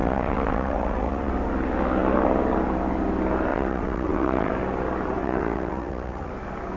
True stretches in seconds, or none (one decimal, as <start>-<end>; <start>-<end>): 1.3-3.5; 4.5-5.2; 6.3-6.8